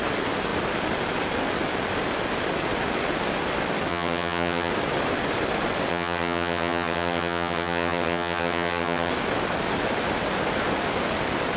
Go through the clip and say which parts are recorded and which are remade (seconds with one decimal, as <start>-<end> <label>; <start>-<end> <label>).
0.0-3.9 recorded; 3.9-4.7 remade; 4.7-5.9 recorded; 5.9-9.1 remade; 9.1-11.6 recorded